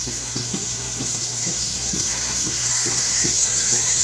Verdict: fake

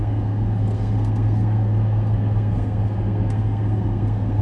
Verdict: fake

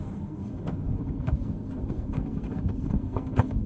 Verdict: fake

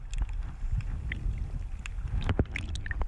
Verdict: real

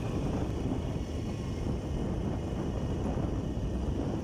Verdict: real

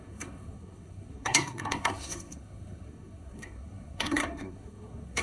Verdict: fake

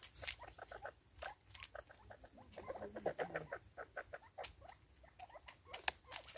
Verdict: real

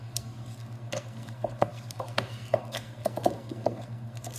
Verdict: fake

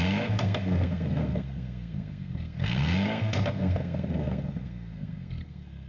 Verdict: fake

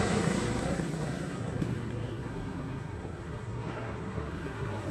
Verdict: fake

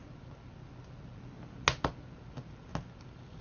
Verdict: real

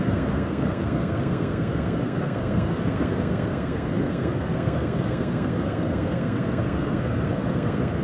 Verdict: fake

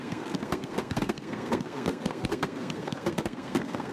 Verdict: fake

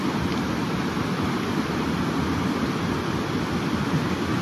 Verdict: real